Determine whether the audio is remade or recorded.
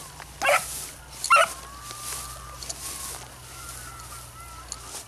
recorded